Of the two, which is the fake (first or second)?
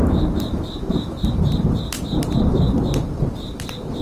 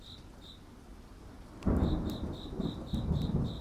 first